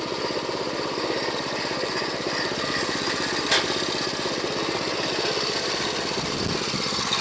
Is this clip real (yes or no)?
yes